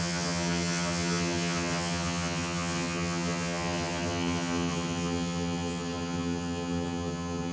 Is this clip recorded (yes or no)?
no